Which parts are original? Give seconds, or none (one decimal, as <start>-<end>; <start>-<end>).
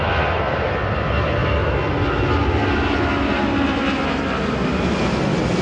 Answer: 0.0-5.6